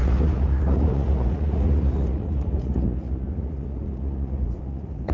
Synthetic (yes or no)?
yes